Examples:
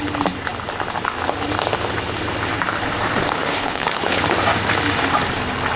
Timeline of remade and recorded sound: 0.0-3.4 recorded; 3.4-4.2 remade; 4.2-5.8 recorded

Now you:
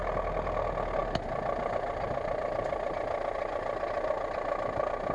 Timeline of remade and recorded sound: 0.0-5.1 recorded

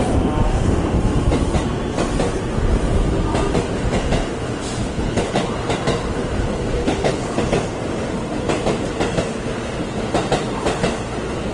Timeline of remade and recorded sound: 0.0-4.8 recorded; 4.8-5.5 remade; 5.5-6.8 recorded; 6.8-7.4 remade; 7.4-11.5 recorded

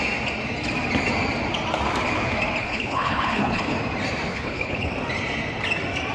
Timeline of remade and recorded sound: 0.0-2.6 recorded; 2.6-3.8 remade; 3.8-4.3 recorded; 4.3-4.9 remade; 4.9-6.1 recorded

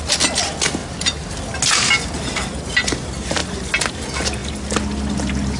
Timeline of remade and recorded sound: 0.0-5.6 recorded